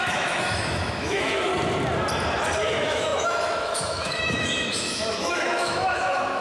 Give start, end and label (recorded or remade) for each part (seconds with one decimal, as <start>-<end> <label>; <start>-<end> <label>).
0.0-1.5 remade; 1.5-2.7 recorded; 2.7-6.4 remade